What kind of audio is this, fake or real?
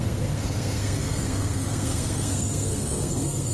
fake